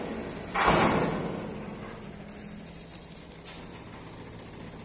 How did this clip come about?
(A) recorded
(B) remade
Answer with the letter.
A